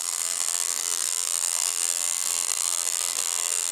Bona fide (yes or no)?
no